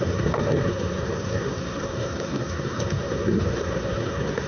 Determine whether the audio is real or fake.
fake